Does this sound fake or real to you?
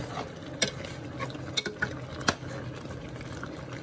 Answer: real